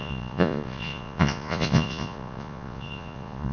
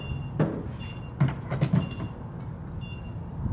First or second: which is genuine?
second